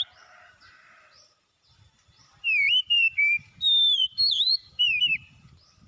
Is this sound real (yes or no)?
no